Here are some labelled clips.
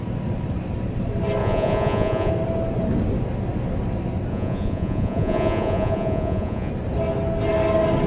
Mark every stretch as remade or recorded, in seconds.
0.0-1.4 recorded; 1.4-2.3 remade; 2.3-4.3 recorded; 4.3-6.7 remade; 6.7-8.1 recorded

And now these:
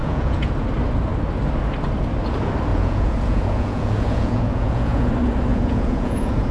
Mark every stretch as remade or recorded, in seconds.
0.0-0.5 remade; 0.5-2.7 recorded; 2.7-5.1 remade; 5.1-5.5 recorded; 5.5-6.5 remade